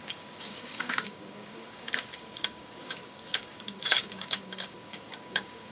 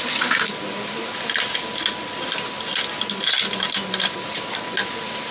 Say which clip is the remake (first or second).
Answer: first